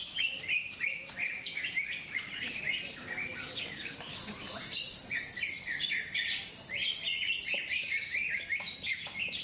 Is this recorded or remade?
recorded